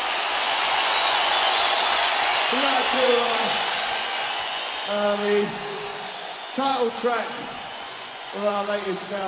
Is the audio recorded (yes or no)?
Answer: no